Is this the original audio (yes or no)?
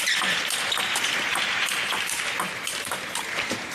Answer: no